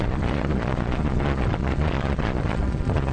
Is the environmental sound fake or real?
fake